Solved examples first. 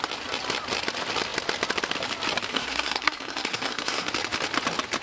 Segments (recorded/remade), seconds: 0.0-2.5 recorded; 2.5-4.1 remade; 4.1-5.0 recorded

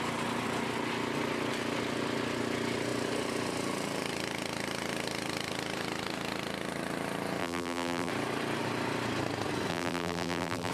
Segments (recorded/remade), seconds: 0.0-7.4 recorded; 7.4-8.1 remade; 8.1-9.7 recorded; 9.7-10.7 remade

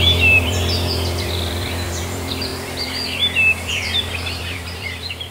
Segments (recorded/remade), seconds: 0.0-5.3 remade

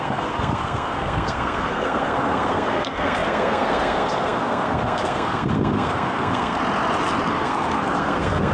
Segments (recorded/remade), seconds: 0.0-6.6 remade; 6.6-7.3 recorded; 7.3-8.5 remade

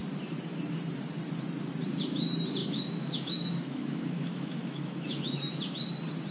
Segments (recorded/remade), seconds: 0.0-2.6 recorded; 2.6-5.6 remade; 5.6-6.3 recorded

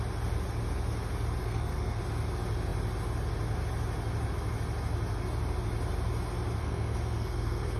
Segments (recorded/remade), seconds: 0.0-1.4 recorded; 1.4-2.0 remade; 2.0-6.6 recorded; 6.6-7.8 remade